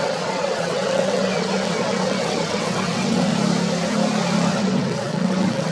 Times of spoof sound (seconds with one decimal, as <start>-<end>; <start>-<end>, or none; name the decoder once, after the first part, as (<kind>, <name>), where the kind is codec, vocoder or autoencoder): 0.0-3.3 (vocoder, WaveNeXt); 4.5-5.7